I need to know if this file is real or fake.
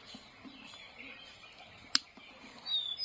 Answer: real